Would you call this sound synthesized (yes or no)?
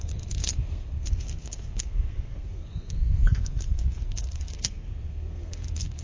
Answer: yes